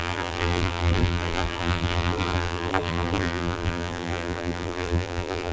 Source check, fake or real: fake